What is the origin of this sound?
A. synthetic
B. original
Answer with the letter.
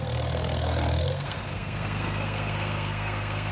A